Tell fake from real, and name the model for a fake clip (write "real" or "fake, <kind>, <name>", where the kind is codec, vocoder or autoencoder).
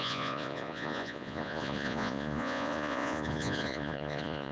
fake, vocoder, Vocos